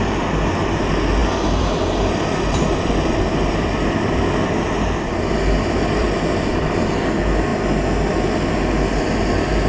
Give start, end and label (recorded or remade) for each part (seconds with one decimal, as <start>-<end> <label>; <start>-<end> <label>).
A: 0.0-1.2 recorded; 1.2-4.2 remade; 4.2-6.0 recorded; 6.0-6.9 remade; 6.9-9.7 recorded